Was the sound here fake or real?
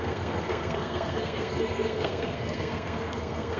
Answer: fake